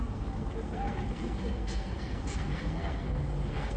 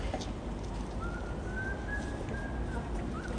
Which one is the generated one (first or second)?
first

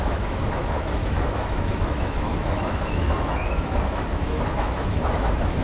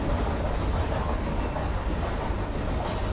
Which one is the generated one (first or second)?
first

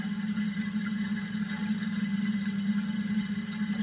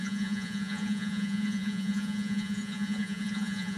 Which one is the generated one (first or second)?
second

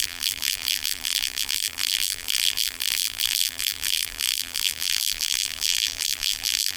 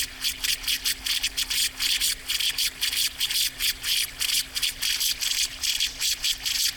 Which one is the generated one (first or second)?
first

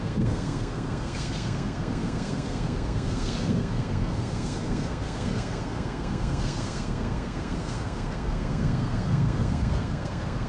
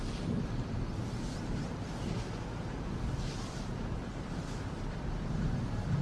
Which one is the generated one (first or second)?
first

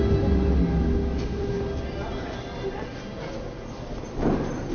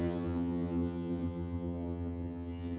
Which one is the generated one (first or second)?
second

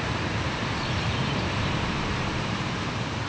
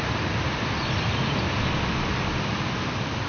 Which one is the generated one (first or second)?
first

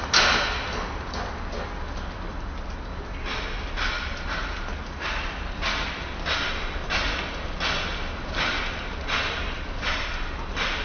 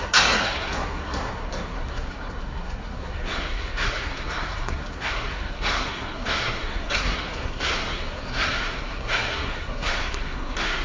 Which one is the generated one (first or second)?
second